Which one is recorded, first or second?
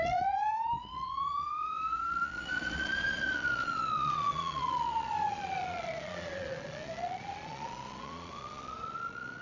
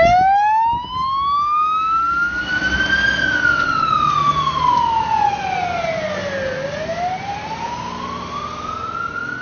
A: second